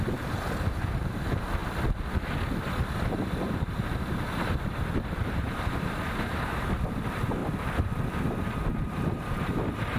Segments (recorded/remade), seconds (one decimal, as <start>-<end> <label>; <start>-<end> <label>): 0.0-1.6 remade; 1.6-3.5 recorded; 3.5-7.4 remade; 7.4-8.2 recorded; 8.2-10.0 remade